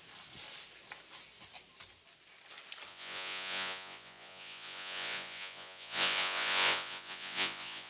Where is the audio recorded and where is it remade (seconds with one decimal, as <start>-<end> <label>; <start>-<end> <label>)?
0.0-2.9 recorded; 2.9-7.9 remade